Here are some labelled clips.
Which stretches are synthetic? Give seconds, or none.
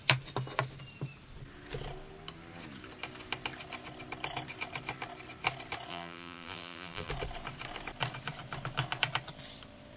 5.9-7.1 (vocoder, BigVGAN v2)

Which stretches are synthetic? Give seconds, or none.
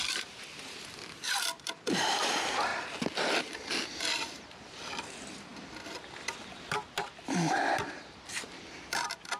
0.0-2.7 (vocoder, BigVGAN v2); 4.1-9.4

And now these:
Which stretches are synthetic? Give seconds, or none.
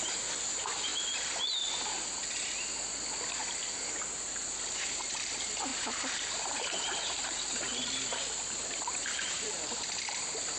0.0-0.9 (vocoder, BigVGAN v2); 4.2-10.6